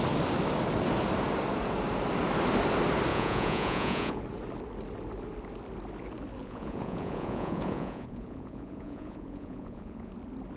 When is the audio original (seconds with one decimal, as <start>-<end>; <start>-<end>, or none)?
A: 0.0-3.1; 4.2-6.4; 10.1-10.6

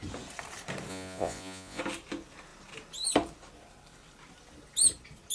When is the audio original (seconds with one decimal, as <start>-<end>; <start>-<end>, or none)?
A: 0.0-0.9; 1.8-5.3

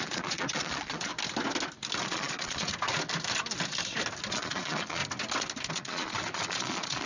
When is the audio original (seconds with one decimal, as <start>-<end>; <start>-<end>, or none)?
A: 1.1-2.0; 2.7-4.3; 5.0-5.7